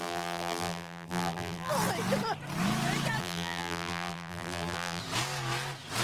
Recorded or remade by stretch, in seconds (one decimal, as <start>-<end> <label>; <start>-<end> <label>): 0.0-1.7 remade; 1.7-3.2 recorded; 3.2-5.0 remade; 5.0-6.0 recorded